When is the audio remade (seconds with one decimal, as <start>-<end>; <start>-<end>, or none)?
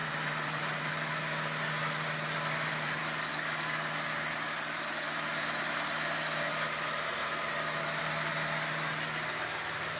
0.0-0.9; 2.7-3.3